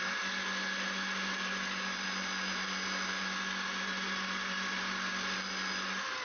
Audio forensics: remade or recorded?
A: recorded